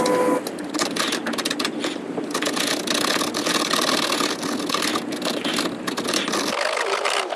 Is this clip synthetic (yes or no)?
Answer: no